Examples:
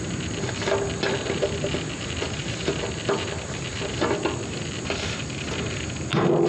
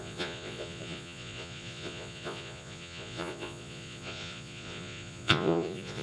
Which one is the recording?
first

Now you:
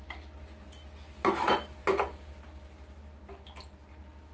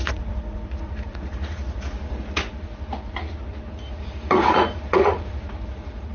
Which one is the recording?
first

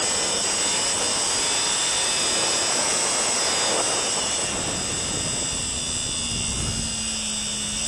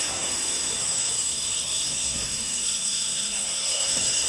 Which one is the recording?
first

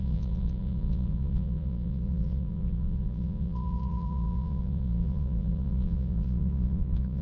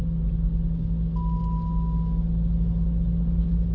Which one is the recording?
second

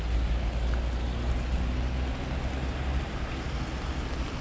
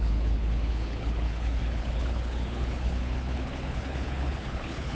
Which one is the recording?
first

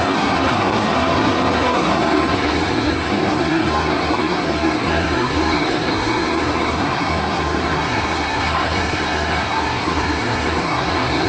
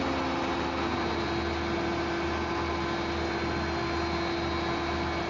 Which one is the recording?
second